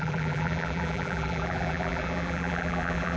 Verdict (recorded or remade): remade